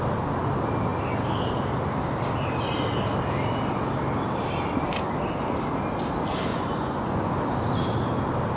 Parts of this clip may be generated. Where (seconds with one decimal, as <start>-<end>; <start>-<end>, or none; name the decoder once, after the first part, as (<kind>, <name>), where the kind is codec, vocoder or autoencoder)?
6.5-7.3 (vocoder, Vocos)